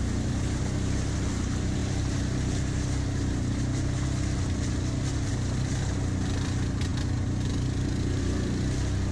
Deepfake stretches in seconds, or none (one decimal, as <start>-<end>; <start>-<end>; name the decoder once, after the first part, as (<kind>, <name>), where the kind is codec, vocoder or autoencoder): none